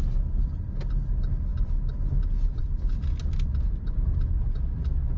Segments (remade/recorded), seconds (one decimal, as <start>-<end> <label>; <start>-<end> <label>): 0.0-5.2 recorded